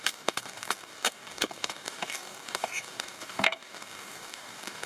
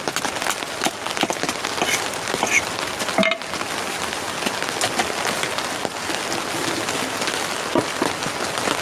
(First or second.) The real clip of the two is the second